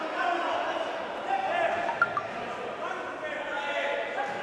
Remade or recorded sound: recorded